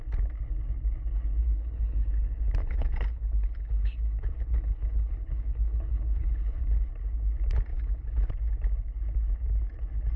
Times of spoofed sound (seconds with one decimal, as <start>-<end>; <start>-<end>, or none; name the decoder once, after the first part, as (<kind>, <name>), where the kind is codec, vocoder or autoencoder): 1.4-2.1 (codec, HILCodec); 2.6-6.9; 7.7-8.3